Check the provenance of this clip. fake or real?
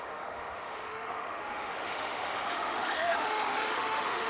fake